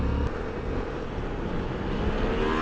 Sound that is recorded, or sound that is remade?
recorded